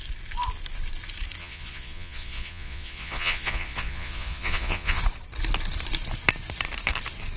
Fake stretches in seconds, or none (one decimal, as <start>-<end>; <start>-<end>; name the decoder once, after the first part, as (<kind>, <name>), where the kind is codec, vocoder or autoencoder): 1.4-5.0 (vocoder, Vocos)